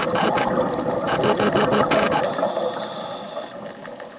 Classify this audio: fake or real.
real